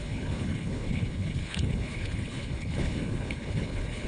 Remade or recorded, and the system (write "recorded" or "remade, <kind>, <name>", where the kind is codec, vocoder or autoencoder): remade, codec, HILCodec